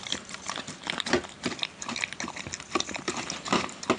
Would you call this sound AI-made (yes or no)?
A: no